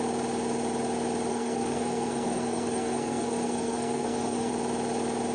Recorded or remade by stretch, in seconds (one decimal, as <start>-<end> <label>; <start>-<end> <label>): 0.0-1.3 recorded; 1.3-4.5 remade; 4.5-5.3 recorded